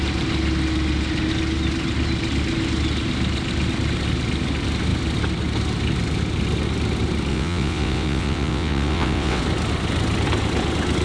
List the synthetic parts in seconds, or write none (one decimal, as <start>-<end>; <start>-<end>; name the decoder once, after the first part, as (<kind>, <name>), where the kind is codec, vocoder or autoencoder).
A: 7.3-9.4 (vocoder, WaveNeXt)